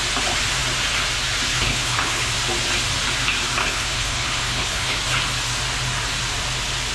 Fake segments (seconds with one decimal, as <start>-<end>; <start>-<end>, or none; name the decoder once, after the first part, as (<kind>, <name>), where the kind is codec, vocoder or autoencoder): 1.5-2.3 (codec, HILCodec); 3.6-5.0